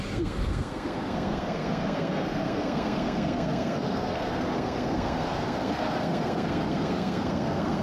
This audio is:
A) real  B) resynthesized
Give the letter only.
B